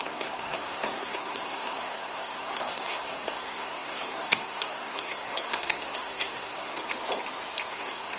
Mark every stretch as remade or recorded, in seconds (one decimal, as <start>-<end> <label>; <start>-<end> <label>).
0.0-6.8 remade; 6.8-7.7 recorded; 7.7-8.2 remade